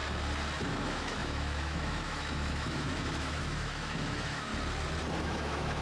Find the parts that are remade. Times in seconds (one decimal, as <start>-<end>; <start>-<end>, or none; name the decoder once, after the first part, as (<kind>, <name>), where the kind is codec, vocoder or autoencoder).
0.6-4.5 (autoencoder, DAC-VAE); 5.2-5.8